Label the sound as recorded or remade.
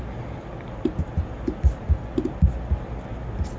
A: recorded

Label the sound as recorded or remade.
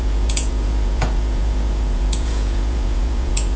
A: remade